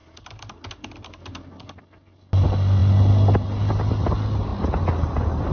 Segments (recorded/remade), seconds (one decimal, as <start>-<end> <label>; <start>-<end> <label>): 0.0-5.5 recorded